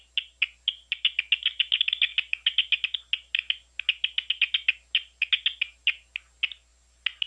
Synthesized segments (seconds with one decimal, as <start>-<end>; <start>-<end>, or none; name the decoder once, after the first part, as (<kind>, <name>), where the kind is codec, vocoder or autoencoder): none